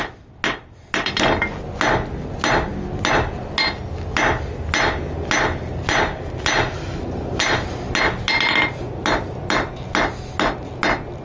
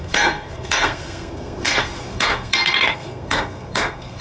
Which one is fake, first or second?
second